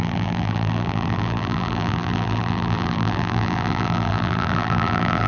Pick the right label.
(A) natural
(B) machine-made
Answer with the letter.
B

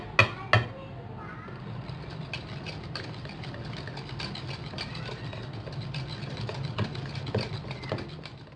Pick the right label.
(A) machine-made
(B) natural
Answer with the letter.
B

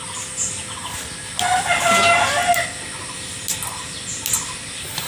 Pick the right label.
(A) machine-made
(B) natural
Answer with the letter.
B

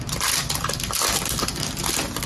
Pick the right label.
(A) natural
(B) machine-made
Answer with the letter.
B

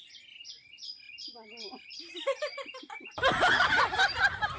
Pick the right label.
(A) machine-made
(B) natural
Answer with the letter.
B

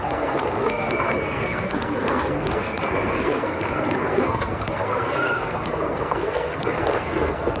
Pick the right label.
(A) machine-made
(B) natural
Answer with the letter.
A